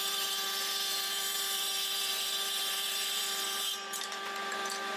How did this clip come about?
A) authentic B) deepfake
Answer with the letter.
B